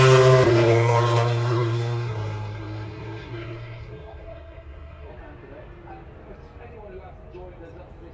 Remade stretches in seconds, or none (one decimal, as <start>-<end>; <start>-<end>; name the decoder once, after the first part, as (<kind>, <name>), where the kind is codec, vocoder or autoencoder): 0.5-5.1 (codec, SNAC)